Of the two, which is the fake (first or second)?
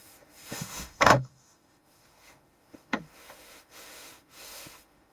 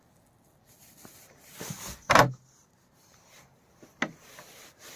first